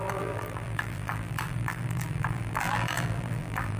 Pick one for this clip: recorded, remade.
remade